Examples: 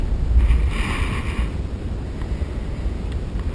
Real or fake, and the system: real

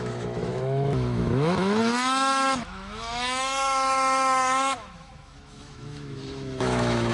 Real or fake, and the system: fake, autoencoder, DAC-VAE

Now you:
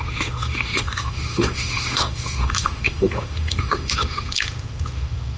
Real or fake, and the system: fake, autoencoder, DAC-VAE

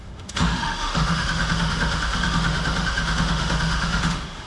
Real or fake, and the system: fake, autoencoder, DAC-VAE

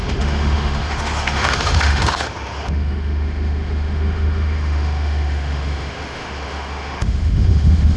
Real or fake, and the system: fake, autoencoder, DAC-VAE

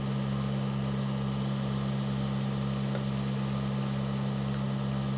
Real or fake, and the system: real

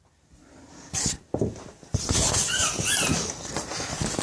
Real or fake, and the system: real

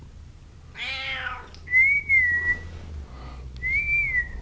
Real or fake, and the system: real